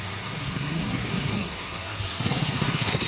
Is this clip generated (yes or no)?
yes